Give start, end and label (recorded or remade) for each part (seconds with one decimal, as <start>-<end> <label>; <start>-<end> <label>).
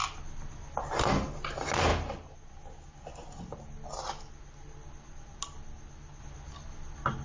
0.0-7.2 recorded